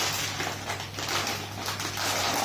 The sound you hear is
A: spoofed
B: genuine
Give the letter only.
B